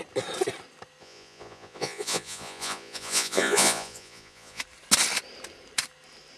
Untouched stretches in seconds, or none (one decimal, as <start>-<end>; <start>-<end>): 0.0-1.0; 4.6-6.4

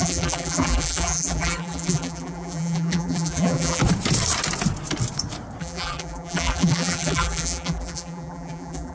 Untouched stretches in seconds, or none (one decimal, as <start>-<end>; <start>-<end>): 3.8-5.6

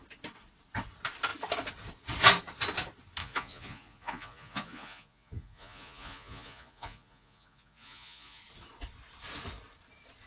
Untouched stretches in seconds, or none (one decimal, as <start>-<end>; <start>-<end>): 0.0-3.2; 8.4-10.3

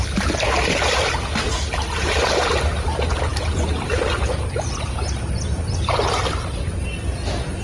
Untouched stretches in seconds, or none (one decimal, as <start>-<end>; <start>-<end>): 0.0-7.6

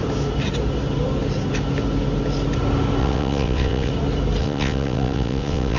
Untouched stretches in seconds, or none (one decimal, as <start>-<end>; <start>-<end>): 0.0-3.0; 3.9-4.4

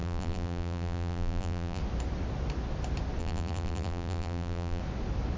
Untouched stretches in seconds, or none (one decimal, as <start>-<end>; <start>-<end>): 1.8-3.2; 4.8-5.4